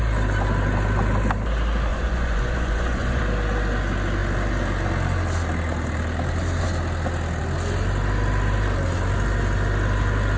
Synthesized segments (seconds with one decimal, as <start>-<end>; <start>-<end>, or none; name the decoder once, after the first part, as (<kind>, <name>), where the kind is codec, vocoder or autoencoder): 1.9-3.2 (vocoder, Vocos)